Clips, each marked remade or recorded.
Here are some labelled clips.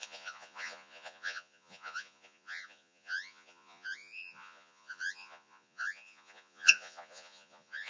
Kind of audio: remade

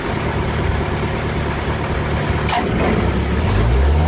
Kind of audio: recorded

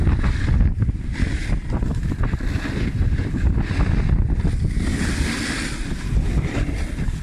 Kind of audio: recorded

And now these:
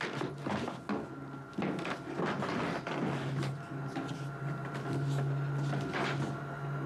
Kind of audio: recorded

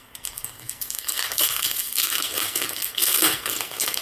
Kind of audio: remade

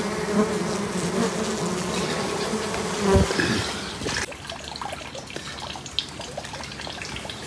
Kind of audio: recorded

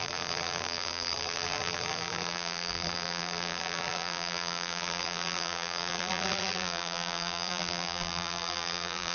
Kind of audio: remade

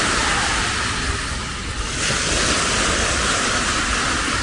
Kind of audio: recorded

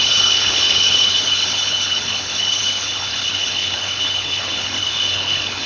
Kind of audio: remade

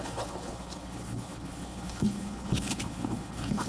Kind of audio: remade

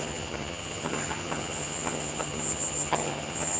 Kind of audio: remade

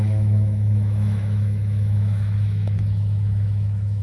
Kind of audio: remade